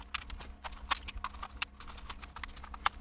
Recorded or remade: recorded